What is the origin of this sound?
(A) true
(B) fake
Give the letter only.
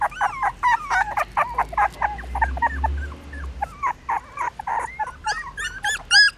A